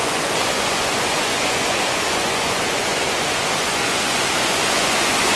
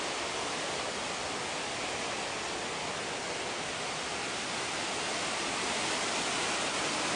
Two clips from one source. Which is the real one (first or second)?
second